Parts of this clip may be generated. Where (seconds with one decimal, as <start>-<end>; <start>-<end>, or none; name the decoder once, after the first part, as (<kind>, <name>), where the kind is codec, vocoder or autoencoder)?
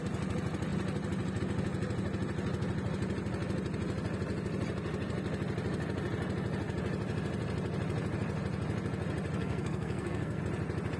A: 9.4-10.4 (codec, SNAC)